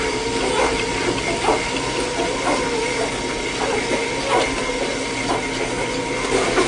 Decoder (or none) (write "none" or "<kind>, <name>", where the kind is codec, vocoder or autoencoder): none